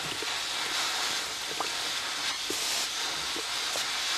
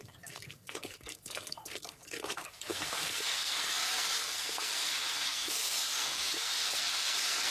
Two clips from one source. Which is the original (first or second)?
first